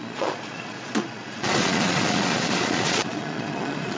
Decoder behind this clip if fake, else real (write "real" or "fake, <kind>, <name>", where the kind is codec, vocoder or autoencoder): fake, vocoder, Vocos